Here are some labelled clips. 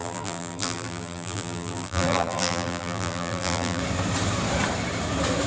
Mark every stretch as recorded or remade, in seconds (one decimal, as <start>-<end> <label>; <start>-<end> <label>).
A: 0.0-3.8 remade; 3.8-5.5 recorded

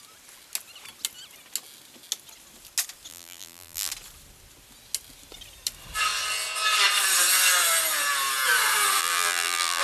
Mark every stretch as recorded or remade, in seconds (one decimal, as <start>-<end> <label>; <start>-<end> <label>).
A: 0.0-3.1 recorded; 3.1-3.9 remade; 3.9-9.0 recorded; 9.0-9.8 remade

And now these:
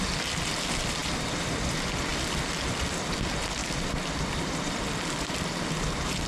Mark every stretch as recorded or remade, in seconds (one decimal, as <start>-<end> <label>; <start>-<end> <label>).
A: 0.0-6.3 recorded